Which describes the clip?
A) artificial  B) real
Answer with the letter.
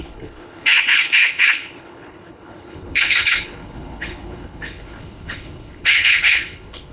A